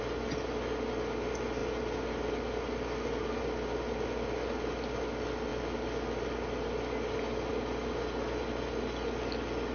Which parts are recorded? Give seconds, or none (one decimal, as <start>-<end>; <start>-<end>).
0.0-9.7